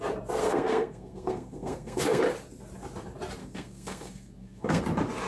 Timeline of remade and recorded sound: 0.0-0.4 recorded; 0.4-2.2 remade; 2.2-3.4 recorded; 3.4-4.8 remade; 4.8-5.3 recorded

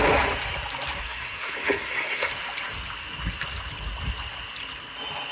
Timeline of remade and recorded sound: 0.0-1.0 recorded; 1.0-2.3 remade; 2.3-5.3 recorded

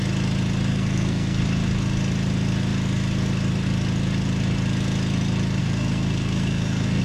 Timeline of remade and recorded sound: 0.0-0.7 recorded; 0.7-1.4 remade; 1.4-5.6 recorded; 5.6-7.0 remade

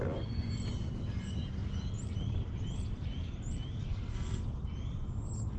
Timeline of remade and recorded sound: 0.0-3.9 recorded; 3.9-4.4 remade; 4.4-5.6 recorded

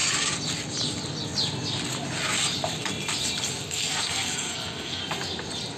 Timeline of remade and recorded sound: 0.0-3.5 recorded; 3.5-5.0 remade; 5.0-5.8 recorded

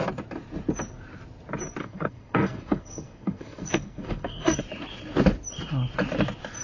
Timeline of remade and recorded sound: 0.0-1.8 recorded; 1.8-4.6 remade; 4.6-6.6 recorded

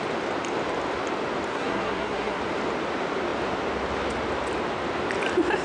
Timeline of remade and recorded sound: 0.0-1.5 recorded; 1.5-2.4 remade; 2.4-5.6 recorded

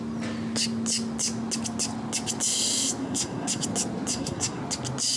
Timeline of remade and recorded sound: 0.0-3.0 recorded; 3.0-3.6 remade; 3.6-4.1 recorded; 4.1-4.6 remade; 4.6-5.2 recorded